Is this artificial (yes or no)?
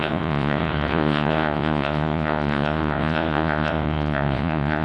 yes